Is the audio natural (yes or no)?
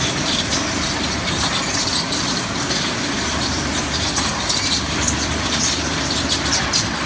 no